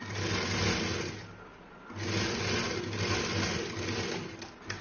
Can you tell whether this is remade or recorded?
recorded